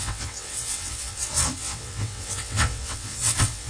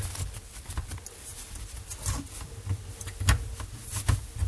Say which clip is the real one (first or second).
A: second